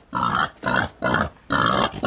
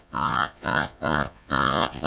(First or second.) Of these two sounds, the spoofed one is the second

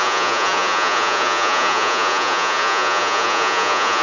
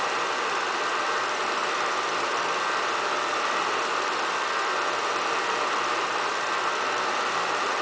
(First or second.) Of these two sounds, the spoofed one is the first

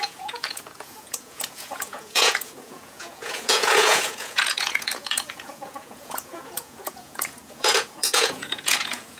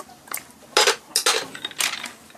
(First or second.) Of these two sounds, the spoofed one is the first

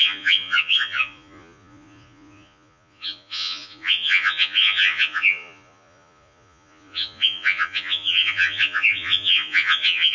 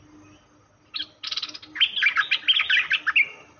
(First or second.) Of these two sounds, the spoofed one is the first